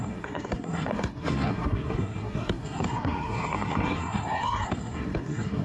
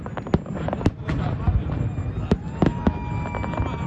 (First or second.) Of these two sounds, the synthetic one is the first